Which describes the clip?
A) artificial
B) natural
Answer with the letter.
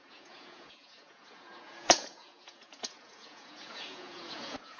A